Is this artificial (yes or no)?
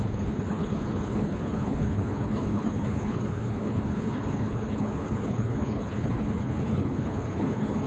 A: yes